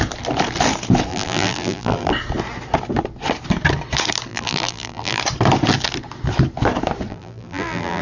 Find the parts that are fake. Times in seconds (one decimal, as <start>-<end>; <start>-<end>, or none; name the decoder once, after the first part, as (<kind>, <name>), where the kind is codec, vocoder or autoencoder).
1.1-2.1 (vocoder, BigVGAN v2); 4.3-5.2; 7.1-8.0